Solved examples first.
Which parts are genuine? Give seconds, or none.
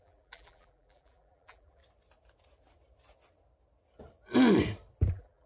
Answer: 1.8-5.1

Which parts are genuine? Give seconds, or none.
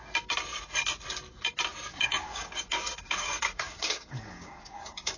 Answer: 0.0-1.9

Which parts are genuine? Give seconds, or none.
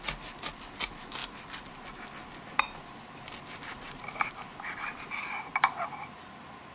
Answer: 0.0-6.7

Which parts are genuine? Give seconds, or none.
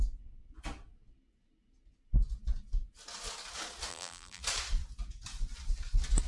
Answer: 0.0-3.9; 4.4-6.3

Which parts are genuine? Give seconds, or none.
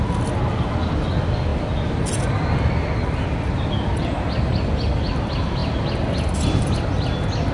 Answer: 0.0-7.5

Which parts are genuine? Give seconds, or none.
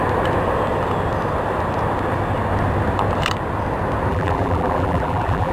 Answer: 0.0-4.1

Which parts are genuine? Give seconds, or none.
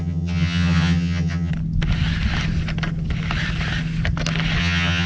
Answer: 1.5-4.6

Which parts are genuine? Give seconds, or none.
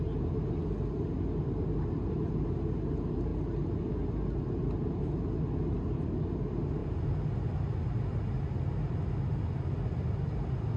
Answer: 0.0-10.8